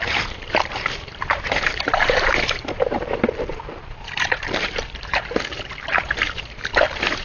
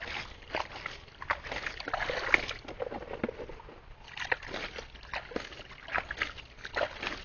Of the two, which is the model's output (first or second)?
first